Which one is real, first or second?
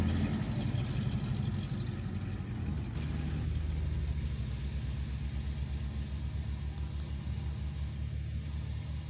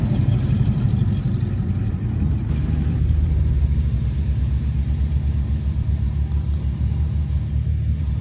first